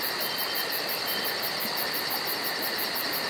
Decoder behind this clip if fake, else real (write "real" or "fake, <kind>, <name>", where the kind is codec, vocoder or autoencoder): real